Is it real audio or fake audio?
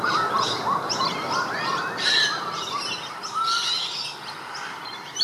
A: real